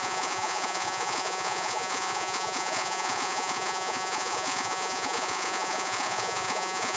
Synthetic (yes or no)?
yes